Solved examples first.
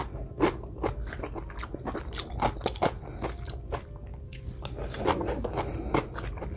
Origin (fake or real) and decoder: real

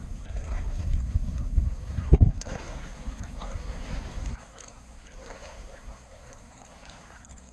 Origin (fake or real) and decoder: fake, codec, SNAC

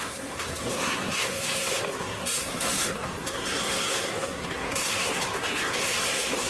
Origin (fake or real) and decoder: fake, codec, SNAC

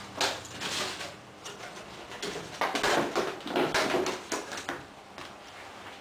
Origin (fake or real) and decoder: real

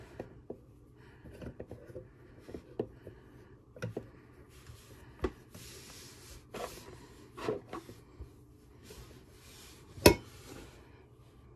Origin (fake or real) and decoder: real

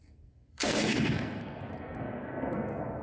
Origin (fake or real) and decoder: fake, codec, SNAC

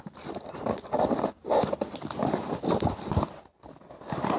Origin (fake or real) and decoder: real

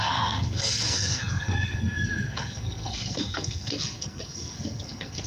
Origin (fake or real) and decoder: fake, codec, SNAC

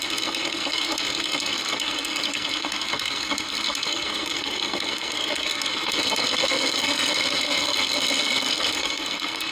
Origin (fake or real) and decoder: fake, codec, SNAC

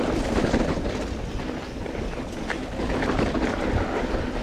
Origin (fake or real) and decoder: real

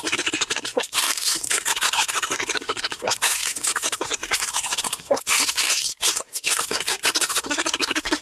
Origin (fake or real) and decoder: fake, codec, SNAC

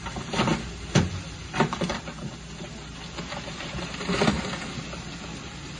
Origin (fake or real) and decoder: real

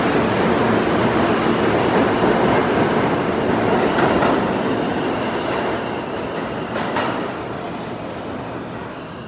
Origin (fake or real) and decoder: real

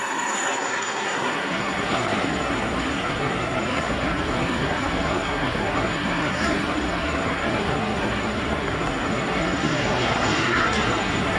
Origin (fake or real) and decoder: fake, codec, SNAC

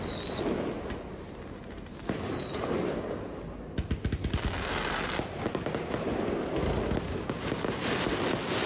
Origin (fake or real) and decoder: real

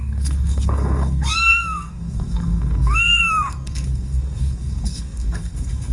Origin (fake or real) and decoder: fake, codec, SNAC